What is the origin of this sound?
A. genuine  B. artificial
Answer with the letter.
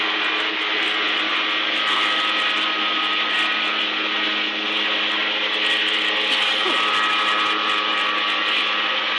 A